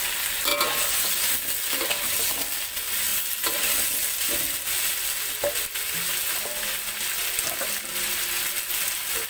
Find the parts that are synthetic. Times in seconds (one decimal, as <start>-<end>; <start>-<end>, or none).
none